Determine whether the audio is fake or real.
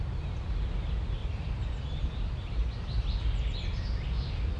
real